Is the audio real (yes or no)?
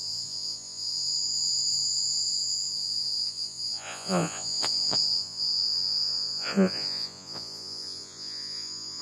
no